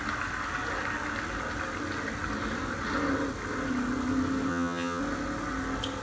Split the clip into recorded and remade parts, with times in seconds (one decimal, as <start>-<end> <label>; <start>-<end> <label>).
0.0-4.5 recorded; 4.5-5.0 remade; 5.0-6.0 recorded